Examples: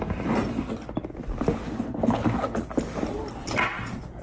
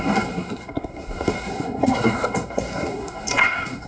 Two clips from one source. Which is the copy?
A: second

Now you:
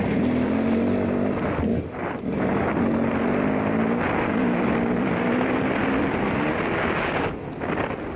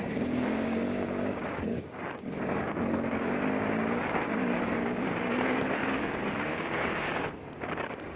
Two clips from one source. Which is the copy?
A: second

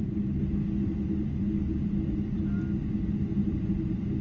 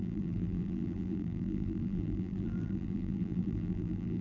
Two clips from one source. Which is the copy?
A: second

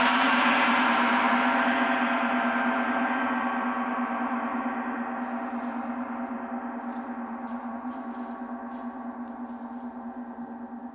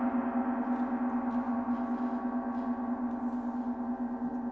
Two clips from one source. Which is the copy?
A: first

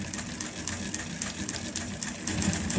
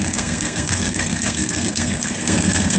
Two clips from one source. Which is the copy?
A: second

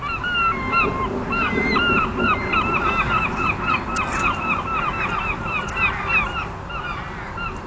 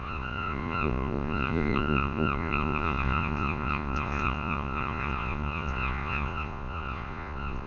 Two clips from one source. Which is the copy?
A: second